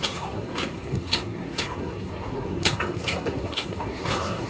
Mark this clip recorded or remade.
remade